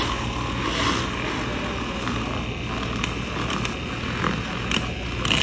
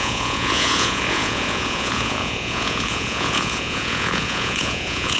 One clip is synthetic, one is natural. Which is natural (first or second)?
first